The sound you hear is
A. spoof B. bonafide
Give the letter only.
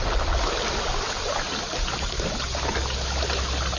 B